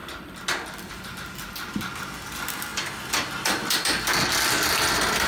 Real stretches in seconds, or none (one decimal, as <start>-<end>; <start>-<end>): 0.0-5.3